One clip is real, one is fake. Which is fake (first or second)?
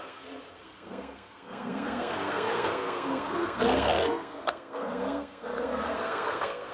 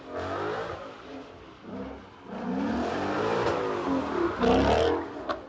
first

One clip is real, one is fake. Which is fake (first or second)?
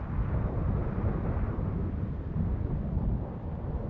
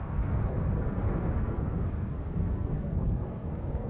second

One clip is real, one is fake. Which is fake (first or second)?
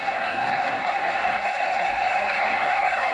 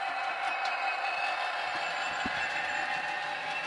first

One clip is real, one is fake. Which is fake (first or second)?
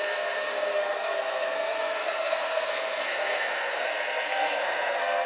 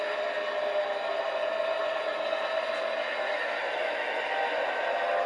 first